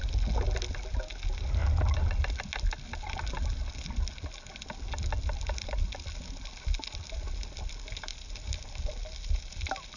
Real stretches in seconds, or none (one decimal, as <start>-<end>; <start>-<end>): 0.0-10.0